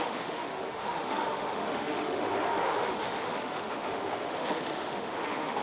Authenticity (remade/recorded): remade